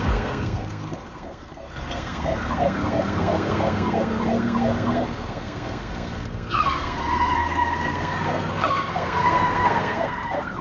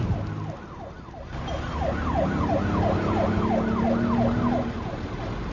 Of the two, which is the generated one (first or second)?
first